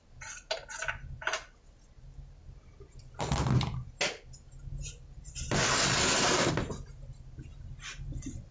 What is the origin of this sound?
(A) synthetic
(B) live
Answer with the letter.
B